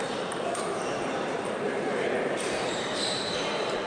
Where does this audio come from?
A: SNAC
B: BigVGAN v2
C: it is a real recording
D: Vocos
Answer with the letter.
B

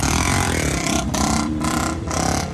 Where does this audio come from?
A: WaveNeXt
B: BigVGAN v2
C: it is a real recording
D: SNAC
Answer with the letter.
B